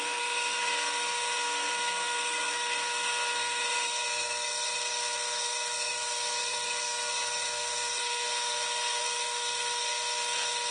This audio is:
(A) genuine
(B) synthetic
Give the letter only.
B